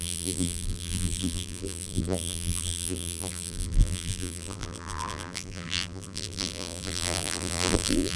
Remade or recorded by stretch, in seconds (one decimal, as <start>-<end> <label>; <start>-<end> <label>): 0.0-8.2 remade